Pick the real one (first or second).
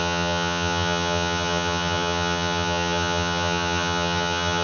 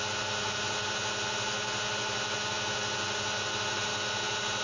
second